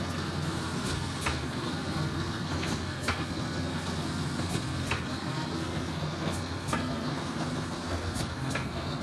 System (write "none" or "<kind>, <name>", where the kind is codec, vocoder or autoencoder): codec, SNAC